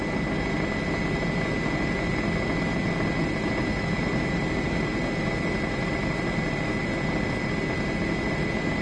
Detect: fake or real real